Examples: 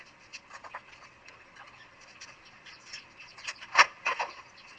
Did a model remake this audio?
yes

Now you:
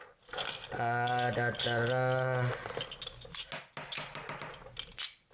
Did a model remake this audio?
no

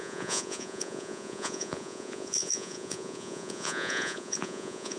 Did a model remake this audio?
yes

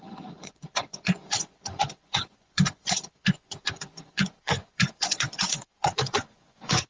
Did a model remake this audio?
yes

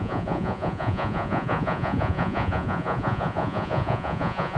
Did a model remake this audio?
yes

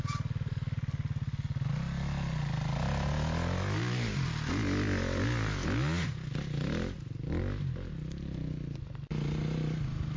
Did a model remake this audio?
no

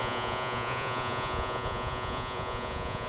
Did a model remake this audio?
yes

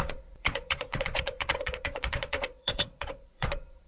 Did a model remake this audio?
yes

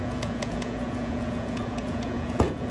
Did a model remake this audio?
yes